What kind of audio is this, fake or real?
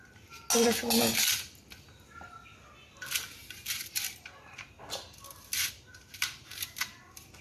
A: real